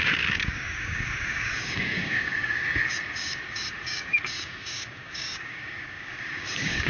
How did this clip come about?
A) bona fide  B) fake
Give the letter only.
B